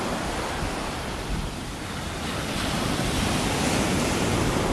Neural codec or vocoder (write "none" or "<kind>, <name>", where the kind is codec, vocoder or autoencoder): none